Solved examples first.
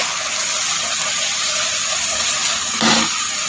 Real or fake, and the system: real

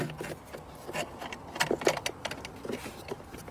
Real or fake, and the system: real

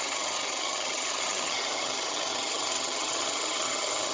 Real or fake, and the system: fake, vocoder, HiFi-GAN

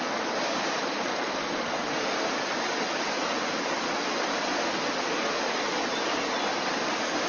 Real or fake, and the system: real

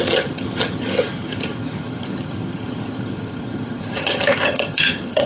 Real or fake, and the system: fake, vocoder, HiFi-GAN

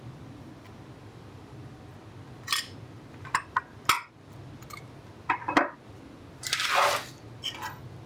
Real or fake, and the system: real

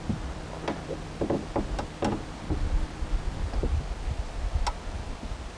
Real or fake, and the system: real